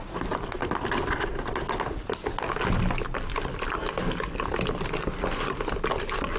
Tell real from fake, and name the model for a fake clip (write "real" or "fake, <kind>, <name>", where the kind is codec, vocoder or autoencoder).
real